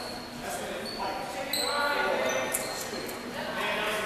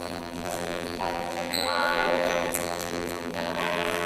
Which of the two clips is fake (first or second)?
second